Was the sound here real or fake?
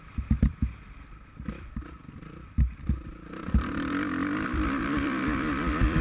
fake